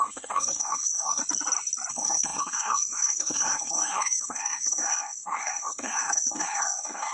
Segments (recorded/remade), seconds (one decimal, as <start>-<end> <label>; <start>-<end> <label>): 0.0-1.2 remade; 1.2-1.9 recorded; 1.9-7.1 remade